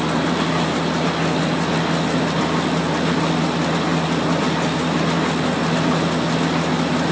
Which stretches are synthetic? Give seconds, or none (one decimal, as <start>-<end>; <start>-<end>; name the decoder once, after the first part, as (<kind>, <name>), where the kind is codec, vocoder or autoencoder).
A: none